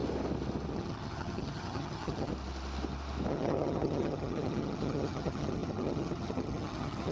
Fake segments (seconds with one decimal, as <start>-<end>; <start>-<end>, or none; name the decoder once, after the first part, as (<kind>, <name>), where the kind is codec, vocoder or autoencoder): 0.7-2.3 (vocoder, HiFi-GAN); 3.3-7.1